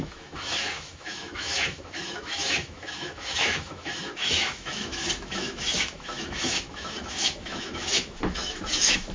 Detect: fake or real fake